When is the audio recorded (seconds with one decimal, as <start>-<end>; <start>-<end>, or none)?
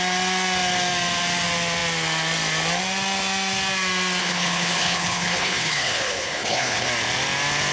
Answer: 0.0-4.2; 6.9-7.7